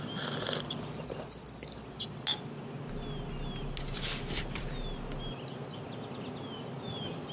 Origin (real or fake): real